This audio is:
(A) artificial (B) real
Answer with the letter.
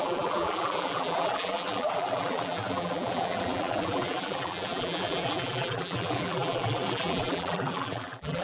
A